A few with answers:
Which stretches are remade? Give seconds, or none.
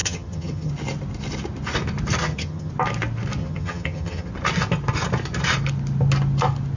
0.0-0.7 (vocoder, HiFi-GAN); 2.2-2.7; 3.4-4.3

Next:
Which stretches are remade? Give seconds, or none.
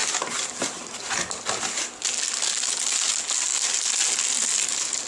none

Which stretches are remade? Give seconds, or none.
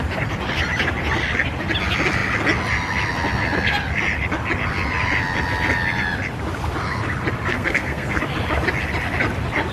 7.5-8.2 (codec, SNAC)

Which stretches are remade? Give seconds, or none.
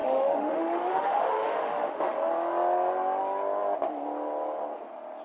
0.0-2.3 (autoencoder, DAC-VAE)